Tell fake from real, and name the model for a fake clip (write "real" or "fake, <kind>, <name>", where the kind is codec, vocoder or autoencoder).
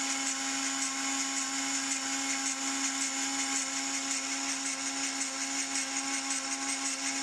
real